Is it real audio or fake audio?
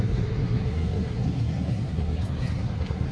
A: fake